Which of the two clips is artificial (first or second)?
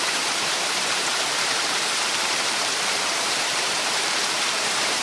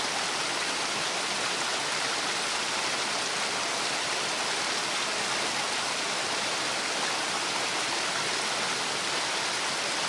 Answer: first